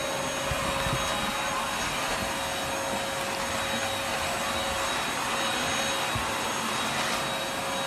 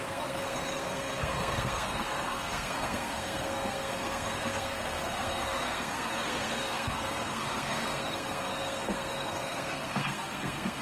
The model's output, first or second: second